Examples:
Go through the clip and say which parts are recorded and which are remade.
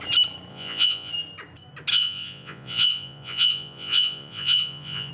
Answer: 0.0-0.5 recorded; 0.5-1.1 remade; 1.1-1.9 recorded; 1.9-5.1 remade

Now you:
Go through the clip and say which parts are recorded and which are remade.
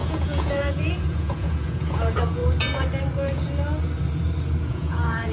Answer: 0.0-2.4 remade; 2.4-4.7 recorded; 4.7-5.3 remade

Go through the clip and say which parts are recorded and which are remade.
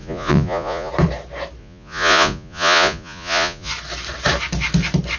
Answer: 0.0-0.9 remade; 0.9-1.6 recorded; 1.6-3.7 remade; 3.7-5.2 recorded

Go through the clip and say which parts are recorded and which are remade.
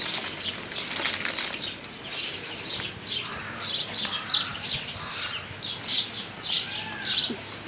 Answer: 0.0-7.7 recorded